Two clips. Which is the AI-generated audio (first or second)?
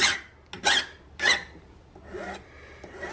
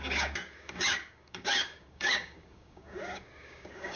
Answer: second